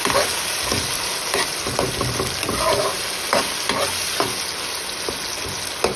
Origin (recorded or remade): recorded